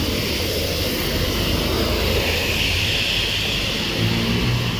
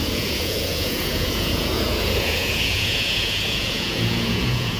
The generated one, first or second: second